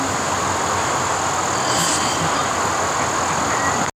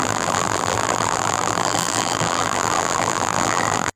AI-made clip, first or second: second